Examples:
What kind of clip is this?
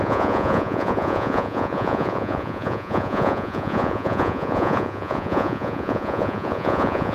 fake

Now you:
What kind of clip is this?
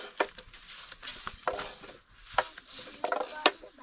real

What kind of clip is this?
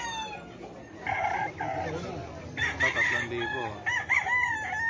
real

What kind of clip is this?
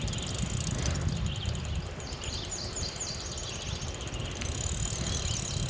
real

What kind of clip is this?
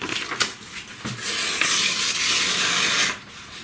real